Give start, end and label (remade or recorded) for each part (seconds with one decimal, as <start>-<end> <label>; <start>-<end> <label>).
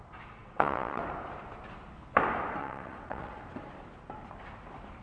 0.0-0.4 recorded; 0.4-1.0 remade; 1.0-2.6 recorded; 2.6-3.4 remade; 3.4-5.0 recorded